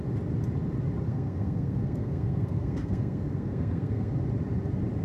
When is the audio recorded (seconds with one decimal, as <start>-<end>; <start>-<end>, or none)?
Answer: 0.0-1.1; 4.1-5.0